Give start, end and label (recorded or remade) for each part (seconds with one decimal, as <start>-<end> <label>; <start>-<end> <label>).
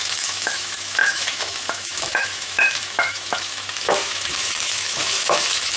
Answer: 0.0-5.8 remade